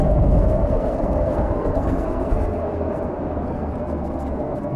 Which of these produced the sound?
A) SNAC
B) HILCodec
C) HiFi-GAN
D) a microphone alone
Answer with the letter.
A